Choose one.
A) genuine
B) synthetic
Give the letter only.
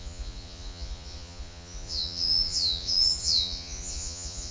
B